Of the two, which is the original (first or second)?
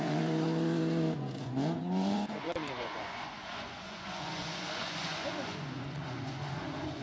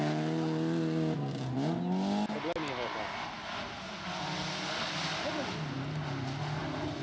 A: second